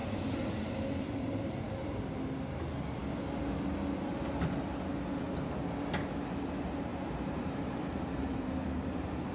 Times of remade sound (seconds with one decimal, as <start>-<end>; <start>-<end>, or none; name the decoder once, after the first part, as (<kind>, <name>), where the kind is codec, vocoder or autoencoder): 0.0-2.0 (vocoder, BigVGAN v2); 6.9-9.3